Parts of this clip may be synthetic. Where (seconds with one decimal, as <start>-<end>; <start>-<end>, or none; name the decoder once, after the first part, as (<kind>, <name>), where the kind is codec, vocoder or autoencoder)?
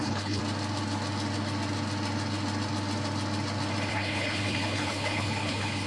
0.0-0.4 (codec, HILCodec); 3.9-5.9